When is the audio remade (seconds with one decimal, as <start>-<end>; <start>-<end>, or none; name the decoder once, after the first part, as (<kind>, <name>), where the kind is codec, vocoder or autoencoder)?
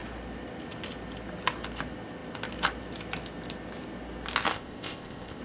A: 4.5-5.4 (codec, ZipCodec)